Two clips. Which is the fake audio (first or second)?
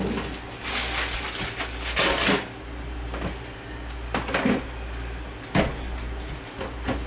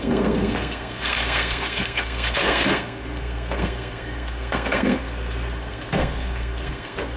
second